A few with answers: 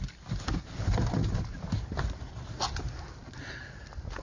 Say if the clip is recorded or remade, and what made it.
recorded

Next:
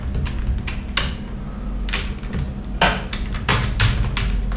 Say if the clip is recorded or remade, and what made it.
recorded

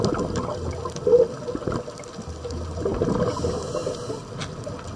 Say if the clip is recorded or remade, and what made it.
recorded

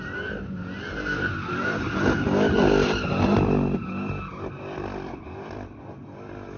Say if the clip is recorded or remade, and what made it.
recorded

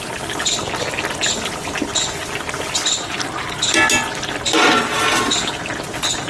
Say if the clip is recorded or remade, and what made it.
recorded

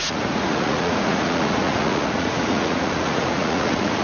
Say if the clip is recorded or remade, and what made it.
remade, vocoder, Vocos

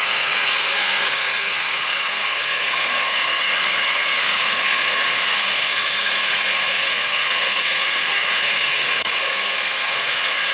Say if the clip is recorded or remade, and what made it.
remade, codec, SNAC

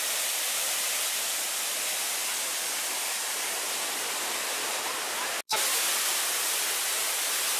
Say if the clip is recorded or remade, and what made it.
recorded